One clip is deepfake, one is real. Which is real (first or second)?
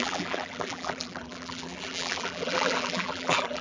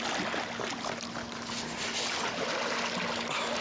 second